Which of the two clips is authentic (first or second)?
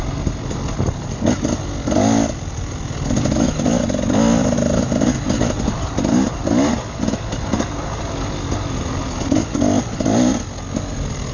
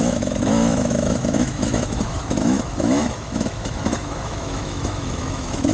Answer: first